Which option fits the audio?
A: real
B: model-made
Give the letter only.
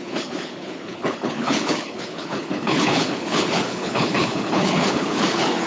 B